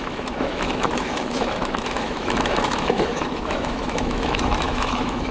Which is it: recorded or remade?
remade